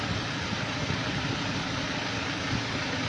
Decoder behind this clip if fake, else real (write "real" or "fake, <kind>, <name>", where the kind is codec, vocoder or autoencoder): real